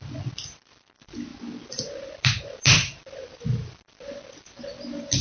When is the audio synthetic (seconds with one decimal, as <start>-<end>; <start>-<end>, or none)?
none